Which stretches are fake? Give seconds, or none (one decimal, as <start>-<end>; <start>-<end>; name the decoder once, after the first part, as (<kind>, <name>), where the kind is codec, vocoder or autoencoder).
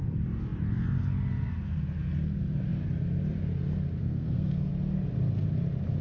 4.0-4.7 (codec, SNAC)